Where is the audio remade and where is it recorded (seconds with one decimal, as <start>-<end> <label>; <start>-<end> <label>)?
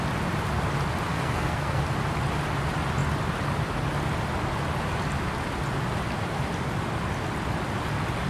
0.0-1.1 recorded; 1.1-1.8 remade; 1.8-8.3 recorded